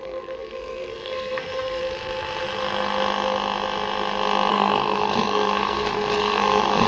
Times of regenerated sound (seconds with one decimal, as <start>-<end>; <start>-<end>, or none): 0.0-1.8; 4.5-6.9